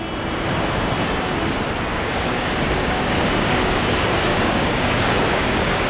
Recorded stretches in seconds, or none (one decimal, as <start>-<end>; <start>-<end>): 0.0-1.9; 3.9-4.3